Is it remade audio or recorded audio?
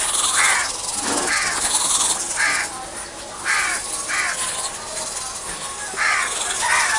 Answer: recorded